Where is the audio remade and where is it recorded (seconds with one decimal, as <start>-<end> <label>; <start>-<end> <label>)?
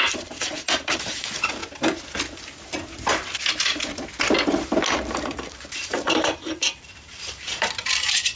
0.0-1.6 remade; 1.6-5.1 recorded; 5.1-8.4 remade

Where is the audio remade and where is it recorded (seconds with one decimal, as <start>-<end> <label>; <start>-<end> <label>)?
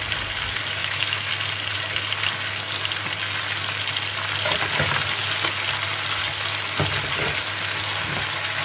0.0-0.8 recorded; 0.8-1.3 remade; 1.3-8.6 recorded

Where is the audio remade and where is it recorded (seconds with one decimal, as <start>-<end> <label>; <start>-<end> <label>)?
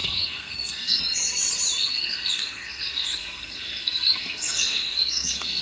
0.0-1.0 remade; 1.0-1.8 recorded; 1.8-5.6 remade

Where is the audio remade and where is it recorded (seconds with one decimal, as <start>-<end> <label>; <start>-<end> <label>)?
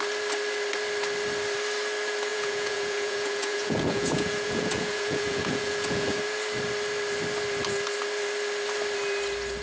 0.0-2.3 recorded; 2.3-6.2 remade; 6.2-9.6 recorded